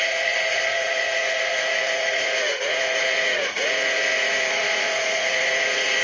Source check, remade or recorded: remade